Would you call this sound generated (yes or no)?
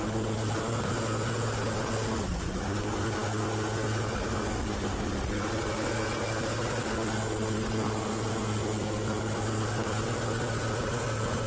no